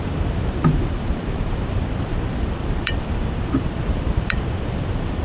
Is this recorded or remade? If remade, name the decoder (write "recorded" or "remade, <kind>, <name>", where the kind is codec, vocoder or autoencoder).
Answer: remade, vocoder, BigVGAN v2